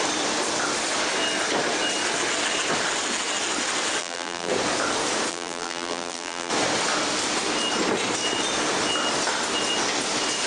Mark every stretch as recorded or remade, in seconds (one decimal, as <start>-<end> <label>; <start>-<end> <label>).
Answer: 0.0-4.0 recorded; 4.0-4.5 remade; 4.5-5.3 recorded; 5.3-6.5 remade; 6.5-10.5 recorded